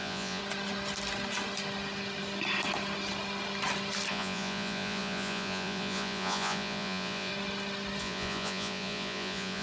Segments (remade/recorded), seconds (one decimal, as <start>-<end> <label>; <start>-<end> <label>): 0.0-0.4 remade; 0.4-4.1 recorded; 4.1-7.3 remade; 7.3-8.0 recorded; 8.0-9.6 remade